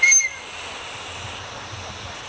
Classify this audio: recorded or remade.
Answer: recorded